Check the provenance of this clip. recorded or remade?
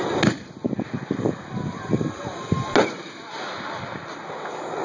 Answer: recorded